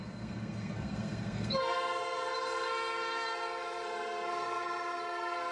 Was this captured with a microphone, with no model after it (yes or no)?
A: no